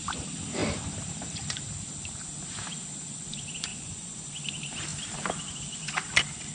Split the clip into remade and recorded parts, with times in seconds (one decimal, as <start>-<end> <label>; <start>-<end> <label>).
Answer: 0.0-3.7 recorded; 3.7-4.3 remade; 4.3-6.5 recorded